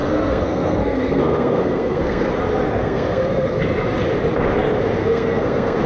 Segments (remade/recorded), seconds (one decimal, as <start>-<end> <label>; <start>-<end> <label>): 0.0-2.3 remade; 2.3-2.8 recorded; 2.8-3.6 remade; 3.6-5.0 recorded; 5.0-5.9 remade